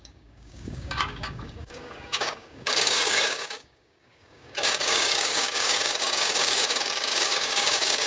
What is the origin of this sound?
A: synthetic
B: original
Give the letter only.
A